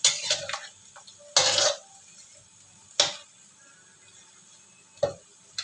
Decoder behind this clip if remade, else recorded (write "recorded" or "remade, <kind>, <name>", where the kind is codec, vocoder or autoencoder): recorded